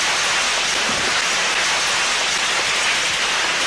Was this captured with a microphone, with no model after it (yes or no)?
yes